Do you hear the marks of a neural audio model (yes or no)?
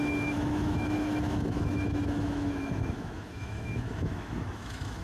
yes